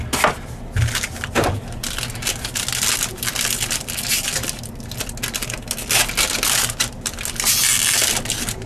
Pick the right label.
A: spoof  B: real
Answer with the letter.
B